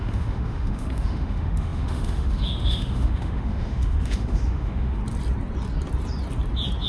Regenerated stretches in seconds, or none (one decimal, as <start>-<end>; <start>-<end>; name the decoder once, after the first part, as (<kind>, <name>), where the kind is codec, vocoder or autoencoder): 0.0-5.0 (autoencoder, DAC-VAE)